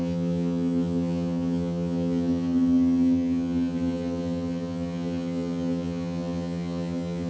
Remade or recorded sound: remade